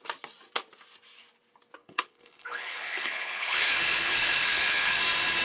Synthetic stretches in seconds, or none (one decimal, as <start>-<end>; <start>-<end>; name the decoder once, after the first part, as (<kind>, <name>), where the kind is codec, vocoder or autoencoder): 1.8-5.0 (codec, HILCodec)